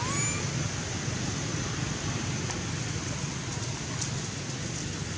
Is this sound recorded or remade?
recorded